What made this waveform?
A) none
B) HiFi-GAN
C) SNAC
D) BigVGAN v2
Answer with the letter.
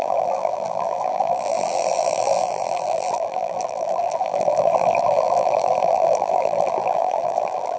D